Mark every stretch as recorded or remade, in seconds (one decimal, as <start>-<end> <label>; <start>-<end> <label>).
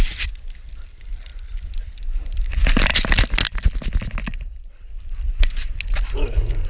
0.0-2.9 remade; 2.9-6.7 recorded